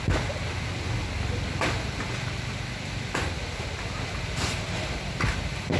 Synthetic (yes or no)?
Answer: no